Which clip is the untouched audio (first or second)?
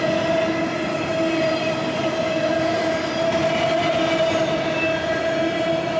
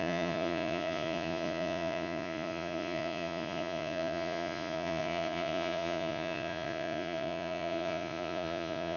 first